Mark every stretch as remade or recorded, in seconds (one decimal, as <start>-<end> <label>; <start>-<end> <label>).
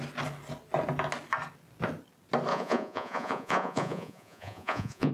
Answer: 0.0-2.5 recorded; 2.5-5.1 remade